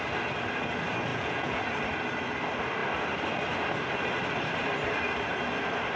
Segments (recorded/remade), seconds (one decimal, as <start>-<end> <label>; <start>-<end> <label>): 0.0-1.1 recorded; 1.1-1.6 remade; 1.6-6.0 recorded